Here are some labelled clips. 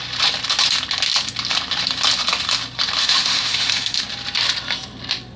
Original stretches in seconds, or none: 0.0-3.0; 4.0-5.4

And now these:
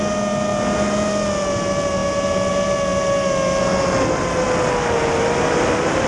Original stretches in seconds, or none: 0.0-6.1

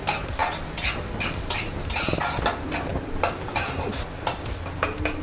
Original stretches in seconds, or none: 0.0-2.9; 3.9-5.2

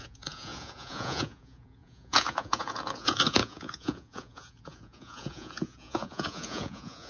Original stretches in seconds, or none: none

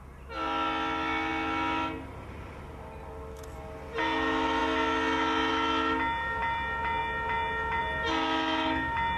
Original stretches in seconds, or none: 0.0-9.2

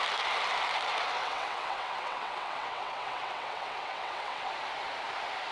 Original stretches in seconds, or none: 0.0-1.2; 4.5-5.5

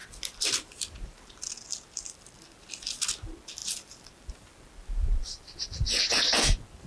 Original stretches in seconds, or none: 1.5-3.6; 4.3-6.9